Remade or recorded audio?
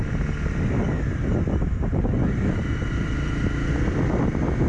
recorded